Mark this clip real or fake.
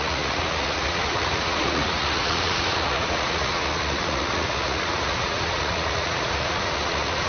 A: fake